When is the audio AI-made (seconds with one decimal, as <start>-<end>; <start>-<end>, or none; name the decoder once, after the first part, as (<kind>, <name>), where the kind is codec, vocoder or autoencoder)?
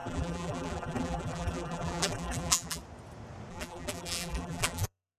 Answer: 0.0-2.8 (vocoder, BigVGAN v2); 3.5-5.2